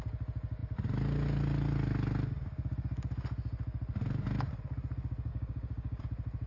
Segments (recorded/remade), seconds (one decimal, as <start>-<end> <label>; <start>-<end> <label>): 0.0-5.3 recorded; 5.3-6.0 remade; 6.0-6.5 recorded